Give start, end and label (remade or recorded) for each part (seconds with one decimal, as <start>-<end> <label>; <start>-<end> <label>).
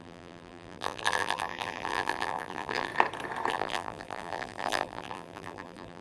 0.0-2.9 remade; 2.9-3.5 recorded; 3.5-6.0 remade